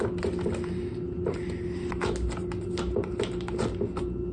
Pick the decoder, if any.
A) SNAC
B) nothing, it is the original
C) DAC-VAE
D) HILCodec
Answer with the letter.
B